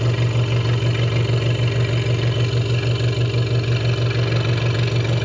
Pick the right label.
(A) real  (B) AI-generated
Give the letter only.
A